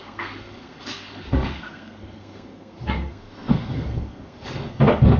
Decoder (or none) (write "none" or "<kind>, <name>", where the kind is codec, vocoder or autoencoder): codec, SNAC